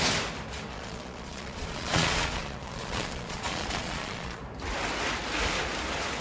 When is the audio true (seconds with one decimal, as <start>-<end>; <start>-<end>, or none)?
0.0-0.7; 4.4-6.2